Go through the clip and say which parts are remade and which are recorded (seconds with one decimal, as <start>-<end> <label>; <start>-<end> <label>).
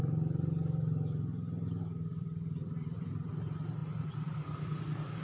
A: 0.0-2.1 recorded; 2.1-3.3 remade; 3.3-5.2 recorded